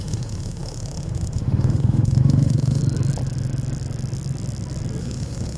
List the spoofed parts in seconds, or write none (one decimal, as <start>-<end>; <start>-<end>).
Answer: 0.0-2.8; 5.0-5.6